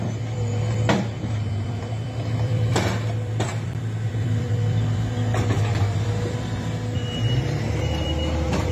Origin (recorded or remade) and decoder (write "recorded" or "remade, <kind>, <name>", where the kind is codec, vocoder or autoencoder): remade, vocoder, BigVGAN v2